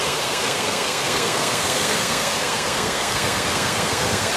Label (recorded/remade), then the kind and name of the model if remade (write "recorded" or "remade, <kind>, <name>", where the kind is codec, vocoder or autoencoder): remade, codec, SNAC